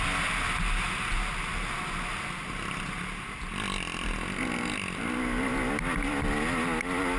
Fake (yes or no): no